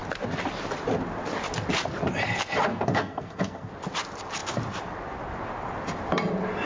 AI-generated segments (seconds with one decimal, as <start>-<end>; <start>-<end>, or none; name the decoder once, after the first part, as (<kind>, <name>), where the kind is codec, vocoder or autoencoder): 2.7-3.7 (codec, SNAC)